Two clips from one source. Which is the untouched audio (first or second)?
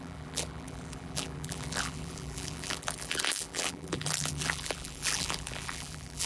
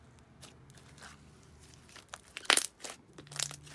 second